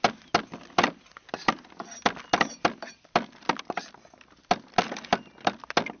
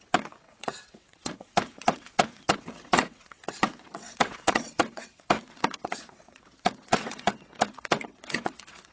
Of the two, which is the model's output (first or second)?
second